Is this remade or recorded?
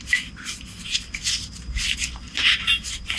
recorded